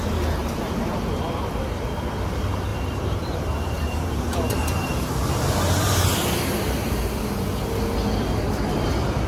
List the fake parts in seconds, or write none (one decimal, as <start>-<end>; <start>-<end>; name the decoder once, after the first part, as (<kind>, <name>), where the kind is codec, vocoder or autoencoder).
0.4-1.2 (vocoder, BigVGAN v2); 2.7-7.0